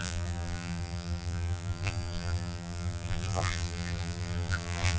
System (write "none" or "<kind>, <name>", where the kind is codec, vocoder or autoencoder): vocoder, BigVGAN v2